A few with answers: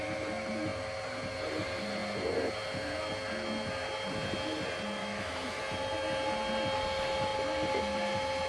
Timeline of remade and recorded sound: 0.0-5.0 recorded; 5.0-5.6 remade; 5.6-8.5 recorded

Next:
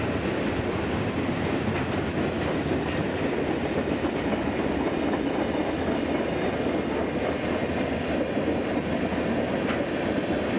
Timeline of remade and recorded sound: 0.0-10.6 recorded

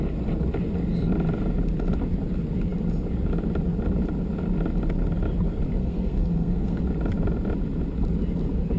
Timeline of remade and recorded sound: 0.0-5.8 recorded; 5.8-6.8 remade; 6.8-8.8 recorded

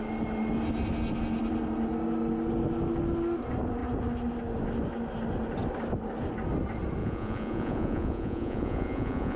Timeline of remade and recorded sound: 0.0-7.0 recorded; 7.0-9.4 remade

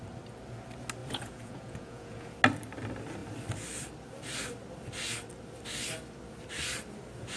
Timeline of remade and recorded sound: 0.0-1.0 recorded; 1.0-2.3 remade; 2.3-7.4 recorded